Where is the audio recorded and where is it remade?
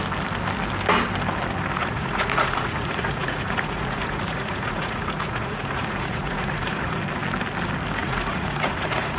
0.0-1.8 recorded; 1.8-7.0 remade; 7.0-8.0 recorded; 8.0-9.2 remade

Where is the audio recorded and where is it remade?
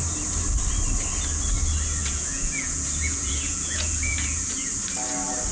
0.0-2.0 recorded; 2.0-4.7 remade; 4.7-5.5 recorded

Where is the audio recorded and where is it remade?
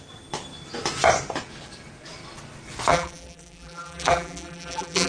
0.0-2.9 recorded; 2.9-5.1 remade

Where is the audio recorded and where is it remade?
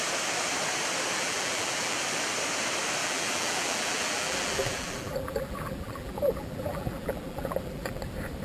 0.0-1.1 recorded; 1.1-2.0 remade; 2.0-3.0 recorded; 3.0-8.0 remade; 8.0-8.4 recorded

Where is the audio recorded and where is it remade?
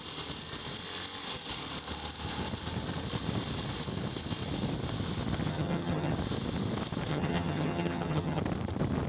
0.0-5.5 recorded; 5.5-6.1 remade; 6.1-7.1 recorded; 7.1-8.4 remade; 8.4-9.1 recorded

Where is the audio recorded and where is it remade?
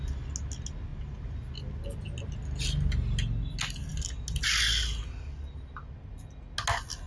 0.0-7.1 recorded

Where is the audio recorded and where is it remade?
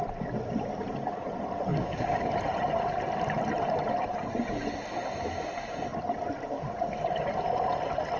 0.0-1.7 recorded; 1.7-2.3 remade; 2.3-8.2 recorded